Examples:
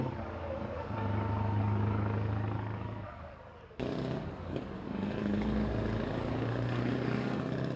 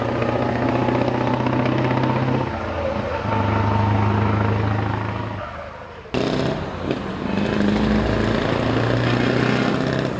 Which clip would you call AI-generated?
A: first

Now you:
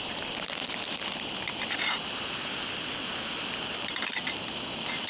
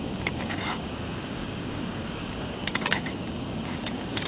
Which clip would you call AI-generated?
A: second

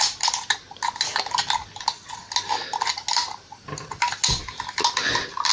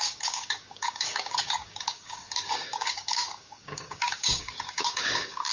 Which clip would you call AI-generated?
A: second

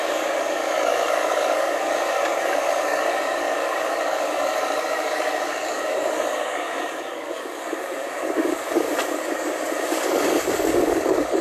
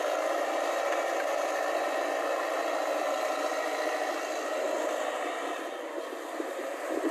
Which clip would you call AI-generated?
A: first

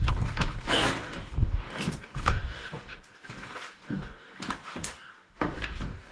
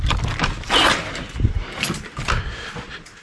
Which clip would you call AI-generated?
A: first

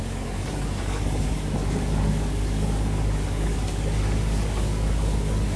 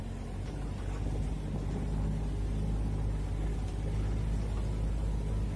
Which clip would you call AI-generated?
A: first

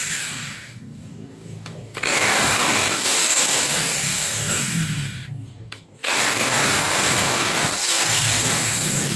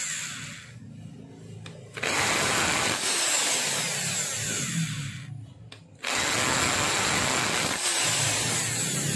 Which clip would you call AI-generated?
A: first